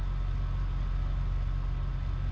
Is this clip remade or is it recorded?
recorded